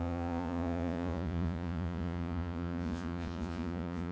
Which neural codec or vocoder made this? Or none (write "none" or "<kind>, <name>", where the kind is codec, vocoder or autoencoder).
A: vocoder, Vocos